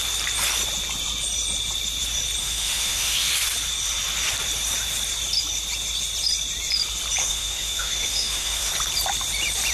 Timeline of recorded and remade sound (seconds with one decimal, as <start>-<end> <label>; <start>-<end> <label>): 0.0-2.4 recorded; 2.4-3.3 remade; 3.3-7.2 recorded; 7.2-8.7 remade; 8.7-9.7 recorded